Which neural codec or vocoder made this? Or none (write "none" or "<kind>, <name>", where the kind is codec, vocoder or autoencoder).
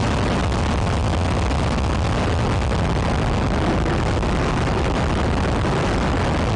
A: none